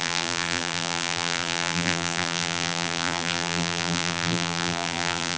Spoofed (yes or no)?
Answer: yes